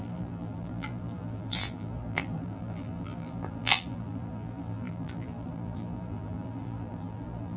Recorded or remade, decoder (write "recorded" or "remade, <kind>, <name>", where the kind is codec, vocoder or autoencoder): remade, vocoder, BigVGAN v2